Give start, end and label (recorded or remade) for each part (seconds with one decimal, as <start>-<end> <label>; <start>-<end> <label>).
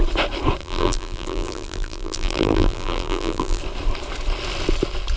0.0-0.6 recorded; 0.6-3.6 remade; 3.6-5.2 recorded